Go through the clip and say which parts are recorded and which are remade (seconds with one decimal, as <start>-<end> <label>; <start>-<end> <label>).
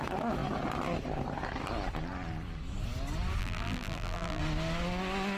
0.0-3.4 recorded; 3.4-4.4 remade; 4.4-5.4 recorded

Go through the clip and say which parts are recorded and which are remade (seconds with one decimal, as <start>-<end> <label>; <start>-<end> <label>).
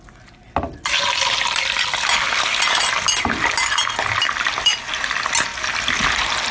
0.0-6.5 recorded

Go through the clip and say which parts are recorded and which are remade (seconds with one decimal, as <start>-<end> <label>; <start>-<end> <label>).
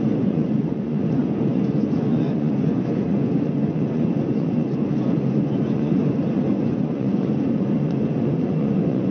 0.0-9.1 remade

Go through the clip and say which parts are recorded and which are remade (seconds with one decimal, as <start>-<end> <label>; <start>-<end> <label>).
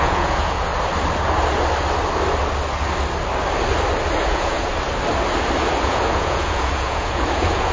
0.0-0.7 remade; 0.7-4.2 recorded; 4.2-4.7 remade; 4.7-5.8 recorded; 5.8-7.7 remade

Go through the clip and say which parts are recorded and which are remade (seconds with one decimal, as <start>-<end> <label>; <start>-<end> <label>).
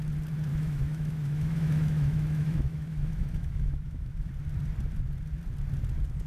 0.0-0.5 recorded; 0.5-4.3 remade; 4.3-6.3 recorded